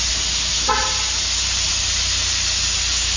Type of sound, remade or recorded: recorded